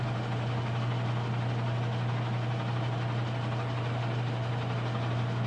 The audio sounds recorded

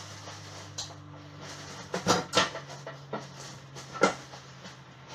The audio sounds recorded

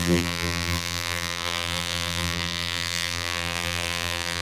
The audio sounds remade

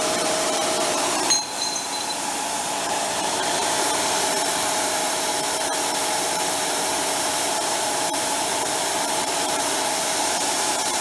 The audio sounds remade